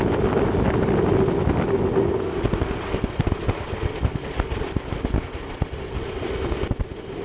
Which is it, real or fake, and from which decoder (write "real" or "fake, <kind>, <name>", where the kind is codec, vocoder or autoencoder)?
real